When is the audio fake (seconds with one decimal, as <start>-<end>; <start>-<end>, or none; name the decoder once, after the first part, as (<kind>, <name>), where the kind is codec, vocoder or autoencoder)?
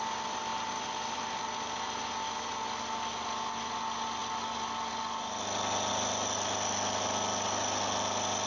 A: none